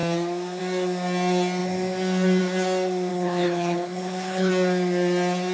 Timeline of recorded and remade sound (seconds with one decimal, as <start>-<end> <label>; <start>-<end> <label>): 0.0-3.1 recorded; 3.1-4.5 remade; 4.5-5.5 recorded